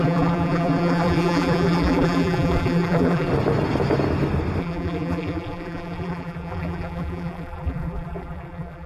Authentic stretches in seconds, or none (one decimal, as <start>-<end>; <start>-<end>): 3.3-4.6